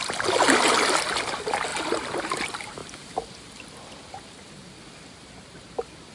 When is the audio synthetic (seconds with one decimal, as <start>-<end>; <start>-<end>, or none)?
none